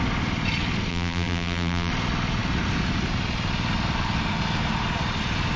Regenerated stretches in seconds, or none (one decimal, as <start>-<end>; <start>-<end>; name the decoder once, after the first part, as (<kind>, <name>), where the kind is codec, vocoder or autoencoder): 0.9-1.9 (vocoder, BigVGAN v2)